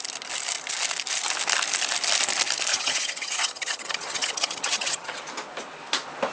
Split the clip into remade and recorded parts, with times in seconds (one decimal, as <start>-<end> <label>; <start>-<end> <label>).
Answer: 0.0-2.7 recorded; 2.7-5.2 remade; 5.2-6.3 recorded

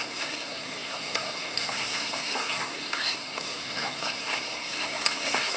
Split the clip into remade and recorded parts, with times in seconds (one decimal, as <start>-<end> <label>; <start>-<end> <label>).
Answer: 0.0-5.6 remade

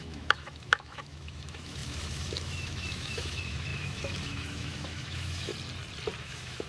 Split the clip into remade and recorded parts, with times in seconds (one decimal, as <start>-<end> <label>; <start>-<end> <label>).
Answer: 0.0-5.5 remade; 5.5-6.2 recorded; 6.2-6.7 remade

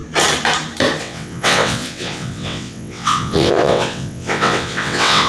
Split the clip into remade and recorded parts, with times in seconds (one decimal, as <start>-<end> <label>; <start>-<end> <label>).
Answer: 0.0-1.0 recorded; 1.0-5.3 remade

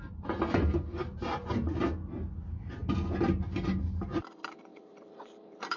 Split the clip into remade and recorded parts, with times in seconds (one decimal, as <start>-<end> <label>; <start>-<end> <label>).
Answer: 0.0-4.7 recorded; 4.7-5.8 remade

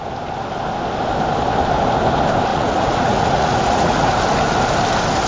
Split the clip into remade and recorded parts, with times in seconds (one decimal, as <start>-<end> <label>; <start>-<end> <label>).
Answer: 0.0-2.5 recorded; 2.5-4.1 remade; 4.1-5.3 recorded

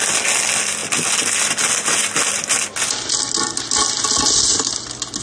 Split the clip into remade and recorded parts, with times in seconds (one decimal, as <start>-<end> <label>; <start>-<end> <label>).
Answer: 0.0-5.2 recorded